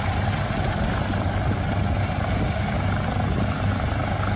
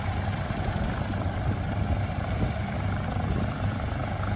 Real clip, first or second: first